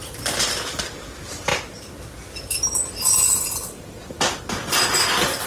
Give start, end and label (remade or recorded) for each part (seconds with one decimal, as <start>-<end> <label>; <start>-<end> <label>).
0.0-5.5 recorded